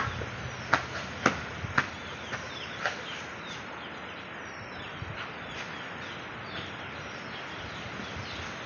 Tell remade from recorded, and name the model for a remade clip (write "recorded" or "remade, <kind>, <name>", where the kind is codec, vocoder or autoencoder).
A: recorded